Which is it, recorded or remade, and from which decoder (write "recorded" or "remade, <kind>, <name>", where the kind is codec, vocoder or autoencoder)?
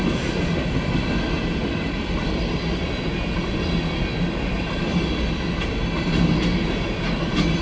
recorded